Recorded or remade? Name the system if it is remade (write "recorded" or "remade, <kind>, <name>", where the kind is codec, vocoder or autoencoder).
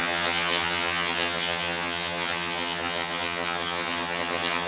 remade, vocoder, HiFi-GAN